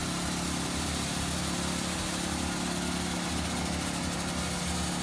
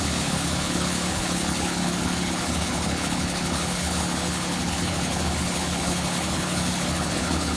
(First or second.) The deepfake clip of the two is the second